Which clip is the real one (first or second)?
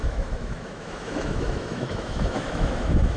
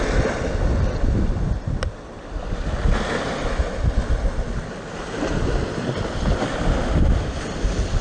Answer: second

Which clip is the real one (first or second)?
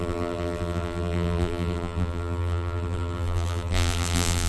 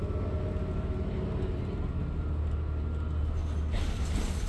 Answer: second